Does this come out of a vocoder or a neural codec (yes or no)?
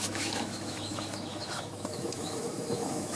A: yes